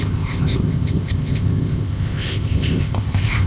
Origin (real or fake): fake